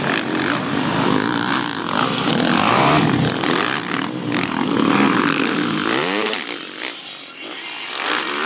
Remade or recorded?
remade